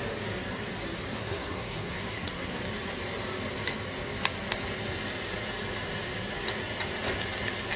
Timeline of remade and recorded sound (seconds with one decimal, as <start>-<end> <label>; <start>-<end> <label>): 0.0-1.2 recorded; 1.2-2.6 remade; 2.6-7.8 recorded